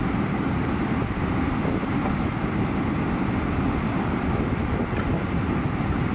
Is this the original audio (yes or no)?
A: yes